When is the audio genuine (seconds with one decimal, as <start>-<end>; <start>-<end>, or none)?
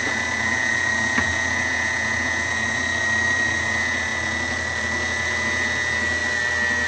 0.0-6.9